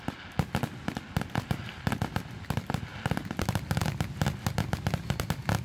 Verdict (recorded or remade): recorded